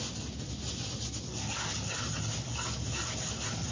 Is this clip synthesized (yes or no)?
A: no